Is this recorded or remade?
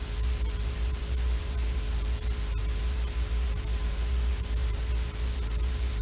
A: remade